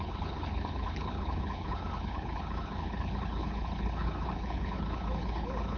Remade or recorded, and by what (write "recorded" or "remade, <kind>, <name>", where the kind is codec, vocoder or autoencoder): remade, codec, HILCodec